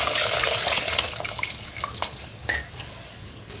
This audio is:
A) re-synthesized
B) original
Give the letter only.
A